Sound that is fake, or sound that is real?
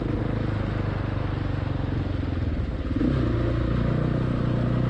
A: real